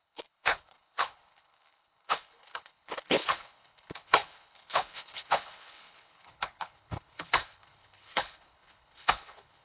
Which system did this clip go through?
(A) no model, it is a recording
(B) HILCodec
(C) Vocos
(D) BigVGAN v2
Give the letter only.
B